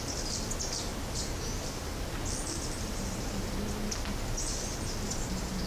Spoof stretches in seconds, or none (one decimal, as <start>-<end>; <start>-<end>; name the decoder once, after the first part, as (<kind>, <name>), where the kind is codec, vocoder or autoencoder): 0.9-2.1 (vocoder, BigVGAN v2)